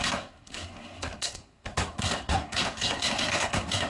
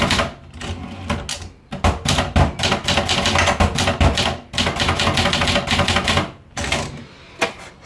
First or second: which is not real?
first